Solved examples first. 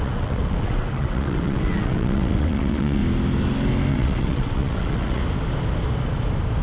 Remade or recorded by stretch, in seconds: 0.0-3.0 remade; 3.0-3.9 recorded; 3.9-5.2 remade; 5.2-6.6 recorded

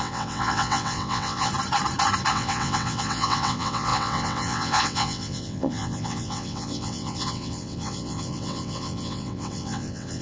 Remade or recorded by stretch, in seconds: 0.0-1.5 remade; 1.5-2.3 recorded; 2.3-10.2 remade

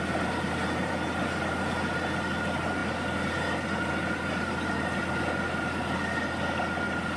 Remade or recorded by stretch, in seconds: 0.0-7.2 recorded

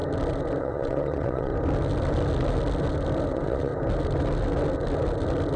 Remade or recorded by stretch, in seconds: 0.0-0.6 recorded; 0.6-1.5 remade; 1.5-3.3 recorded; 3.3-3.7 remade; 3.7-5.6 recorded